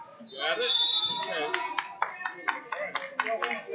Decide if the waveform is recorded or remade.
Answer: recorded